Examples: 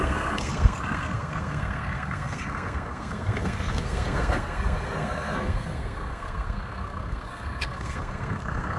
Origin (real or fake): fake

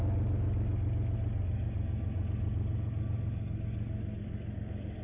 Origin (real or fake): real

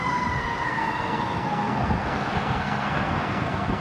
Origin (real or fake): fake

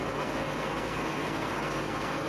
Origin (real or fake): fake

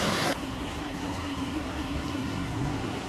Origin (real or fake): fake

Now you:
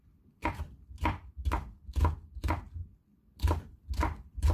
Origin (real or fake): real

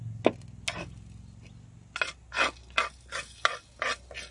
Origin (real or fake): real